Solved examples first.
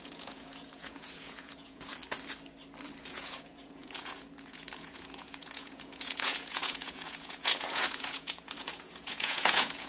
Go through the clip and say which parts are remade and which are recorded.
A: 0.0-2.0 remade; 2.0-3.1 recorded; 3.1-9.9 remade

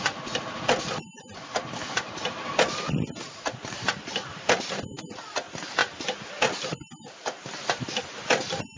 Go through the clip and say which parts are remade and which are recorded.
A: 0.0-8.8 recorded

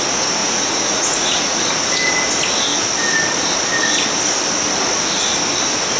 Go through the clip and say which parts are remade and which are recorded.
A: 0.0-0.4 recorded; 0.4-1.6 remade; 1.6-6.0 recorded

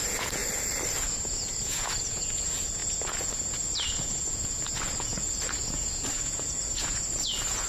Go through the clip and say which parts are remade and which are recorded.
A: 0.0-0.4 remade; 0.4-0.9 recorded; 0.9-7.7 remade

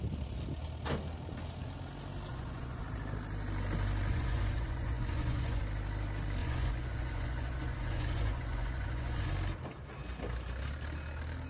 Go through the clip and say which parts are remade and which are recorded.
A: 0.0-2.3 recorded; 2.3-2.8 remade; 2.8-4.1 recorded; 4.1-5.6 remade; 5.6-6.4 recorded; 6.4-9.3 remade; 9.3-11.5 recorded

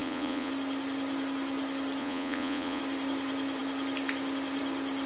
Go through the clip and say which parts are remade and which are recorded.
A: 0.0-0.5 remade; 0.5-2.0 recorded; 2.0-2.8 remade; 2.8-5.1 recorded